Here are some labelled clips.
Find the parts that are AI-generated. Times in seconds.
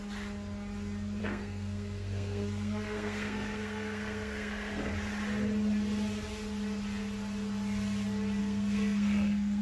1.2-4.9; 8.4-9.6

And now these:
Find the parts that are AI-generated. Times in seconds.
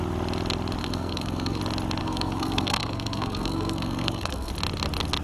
0.8-1.6; 2.0-4.5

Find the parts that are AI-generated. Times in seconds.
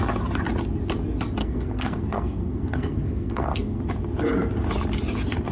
1.4-3.8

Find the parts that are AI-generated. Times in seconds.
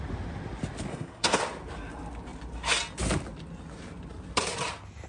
0.9-1.4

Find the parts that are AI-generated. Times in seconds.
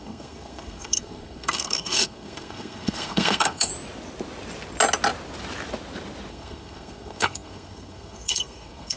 0.0-3.7; 6.3-9.0